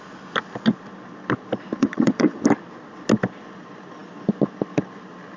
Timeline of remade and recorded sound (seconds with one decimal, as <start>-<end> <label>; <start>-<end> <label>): 0.0-1.8 recorded; 1.8-2.4 remade; 2.4-5.4 recorded